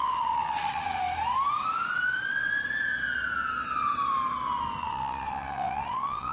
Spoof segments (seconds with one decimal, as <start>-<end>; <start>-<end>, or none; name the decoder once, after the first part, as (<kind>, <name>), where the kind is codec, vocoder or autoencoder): 0.0-1.0 (vocoder, WaveNeXt); 4.8-6.3